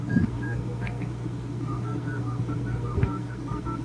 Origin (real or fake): fake